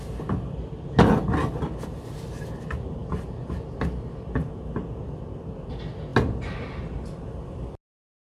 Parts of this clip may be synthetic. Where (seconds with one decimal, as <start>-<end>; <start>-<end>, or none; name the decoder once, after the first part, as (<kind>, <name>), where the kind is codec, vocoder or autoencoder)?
none